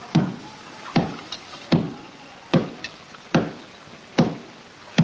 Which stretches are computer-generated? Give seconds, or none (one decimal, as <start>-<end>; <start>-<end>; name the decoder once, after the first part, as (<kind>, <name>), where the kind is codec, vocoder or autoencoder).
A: 0.0-0.6 (vocoder, Vocos); 2.0-2.7